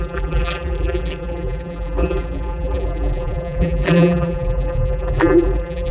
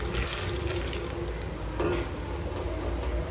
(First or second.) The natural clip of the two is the second